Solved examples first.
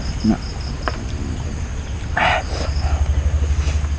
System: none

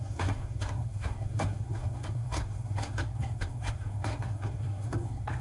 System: codec, SNAC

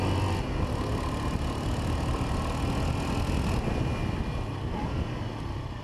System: none